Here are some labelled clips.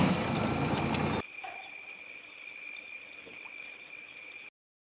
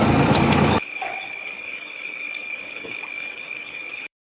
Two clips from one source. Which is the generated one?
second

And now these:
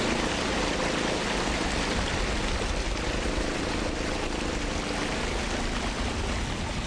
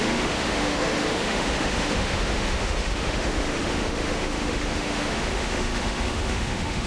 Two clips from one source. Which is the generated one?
second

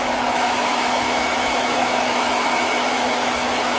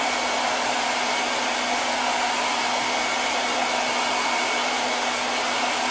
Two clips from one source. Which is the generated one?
first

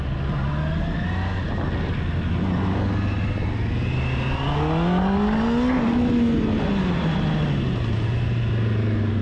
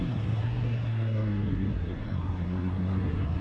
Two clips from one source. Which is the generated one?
second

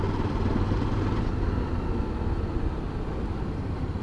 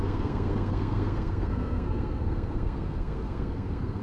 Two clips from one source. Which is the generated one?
second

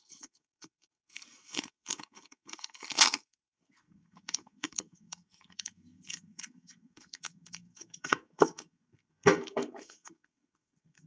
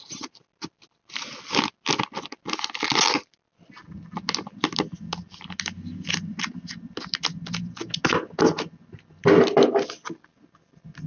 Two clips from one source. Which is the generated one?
first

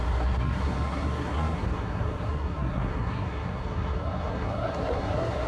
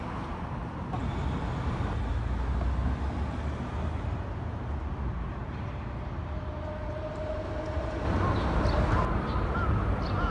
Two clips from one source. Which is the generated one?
first